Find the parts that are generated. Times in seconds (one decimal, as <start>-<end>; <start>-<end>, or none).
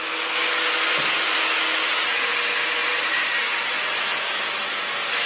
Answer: 2.8-4.3